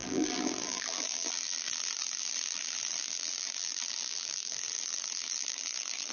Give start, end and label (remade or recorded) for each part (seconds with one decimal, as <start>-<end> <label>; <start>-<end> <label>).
0.0-6.1 remade